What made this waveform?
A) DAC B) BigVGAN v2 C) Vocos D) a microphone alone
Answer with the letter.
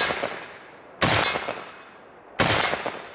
D